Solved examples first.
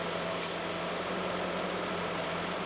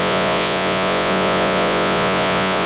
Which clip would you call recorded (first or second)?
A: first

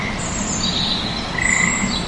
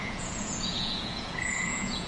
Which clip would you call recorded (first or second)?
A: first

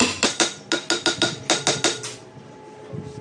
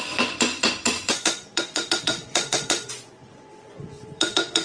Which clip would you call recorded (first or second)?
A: first